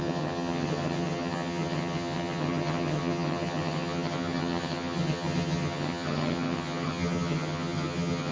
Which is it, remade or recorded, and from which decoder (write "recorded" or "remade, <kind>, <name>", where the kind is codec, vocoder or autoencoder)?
remade, vocoder, HiFi-GAN